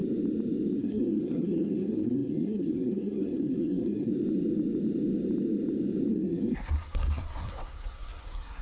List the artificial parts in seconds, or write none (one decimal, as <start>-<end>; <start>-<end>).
0.8-4.1; 6.1-8.6